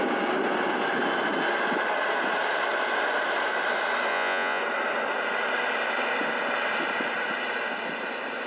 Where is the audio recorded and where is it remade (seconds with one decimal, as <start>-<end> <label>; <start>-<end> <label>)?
0.0-4.1 recorded; 4.1-4.6 remade; 4.6-8.5 recorded